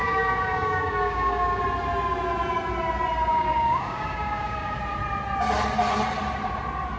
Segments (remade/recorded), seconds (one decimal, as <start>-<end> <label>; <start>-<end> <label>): 0.0-1.6 remade; 1.6-3.3 recorded; 3.3-4.8 remade; 4.8-7.0 recorded